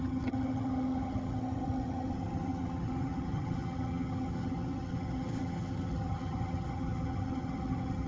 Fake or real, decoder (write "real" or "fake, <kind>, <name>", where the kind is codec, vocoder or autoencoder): fake, vocoder, HiFi-GAN